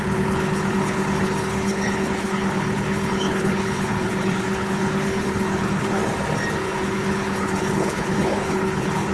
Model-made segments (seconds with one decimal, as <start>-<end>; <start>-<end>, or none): 0.0-6.0; 6.6-9.1